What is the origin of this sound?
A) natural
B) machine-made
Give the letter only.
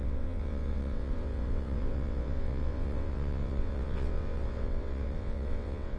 B